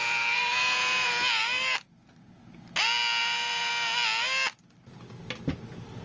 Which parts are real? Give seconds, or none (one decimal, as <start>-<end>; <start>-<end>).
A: 1.1-3.2; 3.7-6.0